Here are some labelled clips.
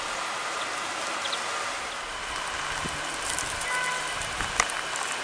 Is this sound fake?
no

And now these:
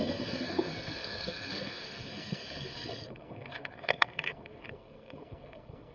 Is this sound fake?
yes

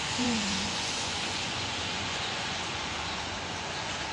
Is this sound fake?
yes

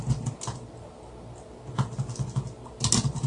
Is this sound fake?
no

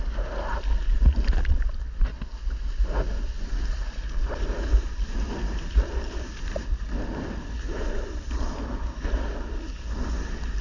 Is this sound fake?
no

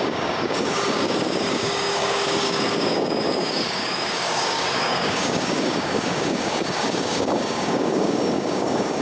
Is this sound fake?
yes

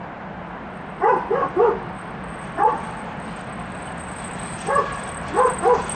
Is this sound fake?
no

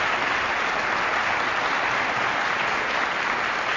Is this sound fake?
no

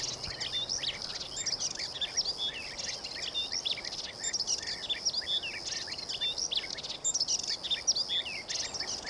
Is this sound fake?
no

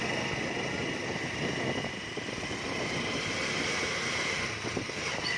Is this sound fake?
no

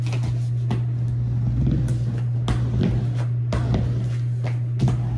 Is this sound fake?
no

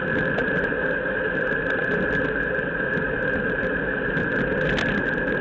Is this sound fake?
no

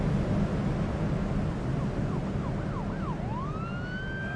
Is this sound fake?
no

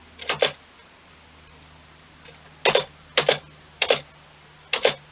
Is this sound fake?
no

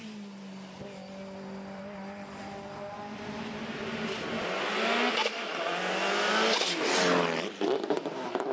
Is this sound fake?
no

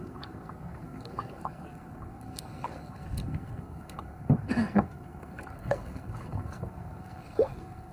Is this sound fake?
yes